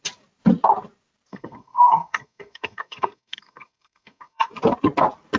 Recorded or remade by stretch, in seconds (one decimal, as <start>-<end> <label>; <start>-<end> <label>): 0.0-1.3 recorded; 1.3-4.5 remade; 4.5-5.4 recorded